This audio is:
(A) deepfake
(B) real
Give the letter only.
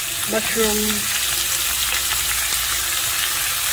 B